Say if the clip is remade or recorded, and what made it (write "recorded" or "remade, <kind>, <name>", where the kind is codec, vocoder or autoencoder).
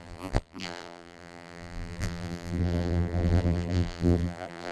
remade, vocoder, BigVGAN v2